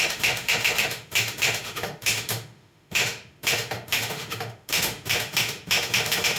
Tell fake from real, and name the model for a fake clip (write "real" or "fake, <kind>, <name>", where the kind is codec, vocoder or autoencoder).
fake, autoencoder, DAC-VAE